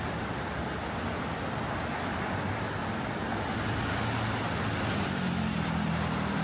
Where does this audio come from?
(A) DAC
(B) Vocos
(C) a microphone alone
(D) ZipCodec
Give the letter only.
C